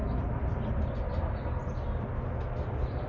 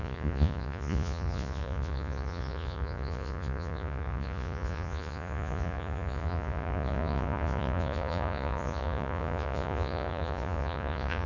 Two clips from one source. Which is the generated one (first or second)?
second